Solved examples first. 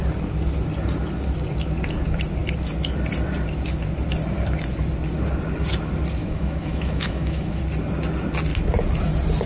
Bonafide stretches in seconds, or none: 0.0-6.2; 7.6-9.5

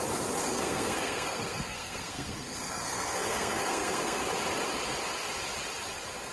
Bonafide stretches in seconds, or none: 0.0-0.4; 4.2-6.3